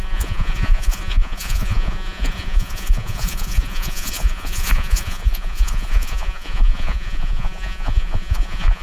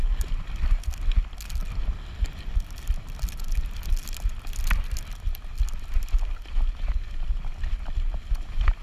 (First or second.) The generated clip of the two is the first